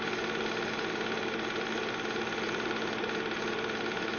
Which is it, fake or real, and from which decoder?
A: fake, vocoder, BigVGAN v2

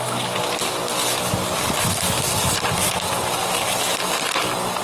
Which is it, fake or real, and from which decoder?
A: real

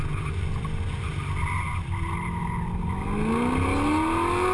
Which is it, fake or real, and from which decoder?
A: real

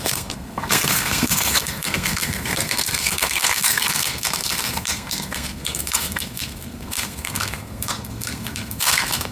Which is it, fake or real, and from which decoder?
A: fake, codec, SNAC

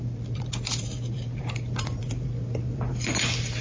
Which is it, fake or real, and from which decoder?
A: fake, vocoder, BigVGAN v2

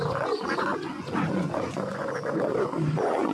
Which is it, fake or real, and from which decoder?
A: fake, vocoder, Vocos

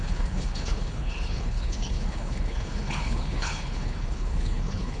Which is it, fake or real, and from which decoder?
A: fake, codec, HILCodec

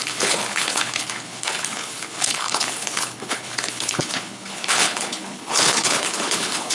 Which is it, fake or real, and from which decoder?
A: fake, codec, HILCodec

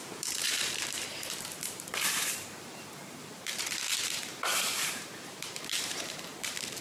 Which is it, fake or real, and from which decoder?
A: fake, vocoder, BigVGAN v2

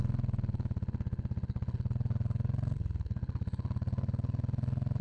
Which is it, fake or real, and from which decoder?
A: real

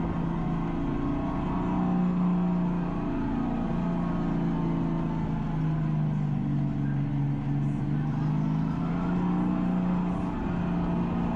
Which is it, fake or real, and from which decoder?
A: real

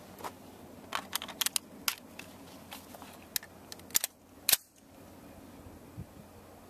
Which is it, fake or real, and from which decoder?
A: real